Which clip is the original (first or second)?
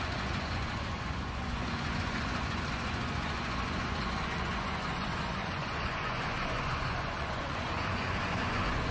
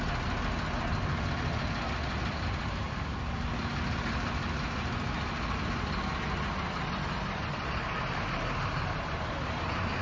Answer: second